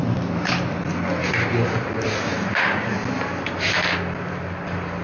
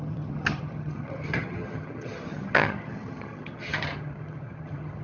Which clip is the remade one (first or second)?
second